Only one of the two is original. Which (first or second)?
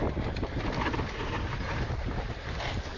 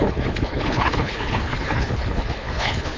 first